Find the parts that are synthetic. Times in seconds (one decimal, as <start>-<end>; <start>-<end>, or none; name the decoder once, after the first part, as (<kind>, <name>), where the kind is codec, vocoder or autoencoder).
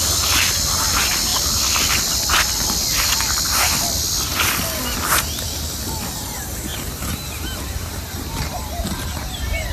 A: 6.7-9.7 (vocoder, BigVGAN v2)